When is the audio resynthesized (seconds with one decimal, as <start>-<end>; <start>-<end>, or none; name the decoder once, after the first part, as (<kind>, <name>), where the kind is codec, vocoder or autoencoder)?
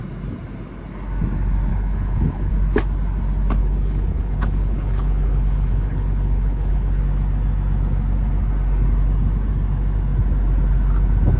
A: 1.7-2.5 (codec, HILCodec); 3.6-7.0